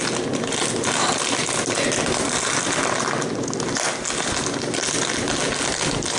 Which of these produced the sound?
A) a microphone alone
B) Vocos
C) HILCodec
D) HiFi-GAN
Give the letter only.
A